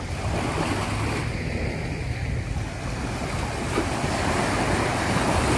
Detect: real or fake real